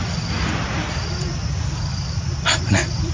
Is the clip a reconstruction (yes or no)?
yes